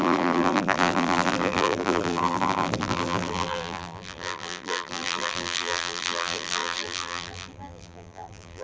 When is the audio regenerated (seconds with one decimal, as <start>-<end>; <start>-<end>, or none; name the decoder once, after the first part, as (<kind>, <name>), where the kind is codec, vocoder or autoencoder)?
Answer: 0.0-8.6 (vocoder, BigVGAN v2)